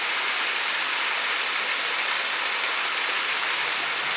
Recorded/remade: recorded